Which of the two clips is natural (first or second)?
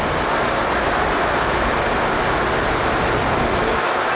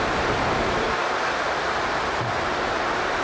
first